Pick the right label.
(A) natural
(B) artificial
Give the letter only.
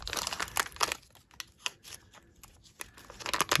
A